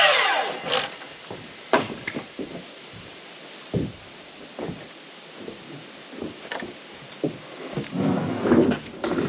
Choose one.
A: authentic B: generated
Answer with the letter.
B